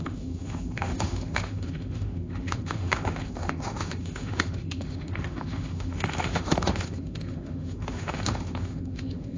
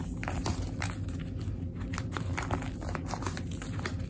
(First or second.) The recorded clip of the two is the second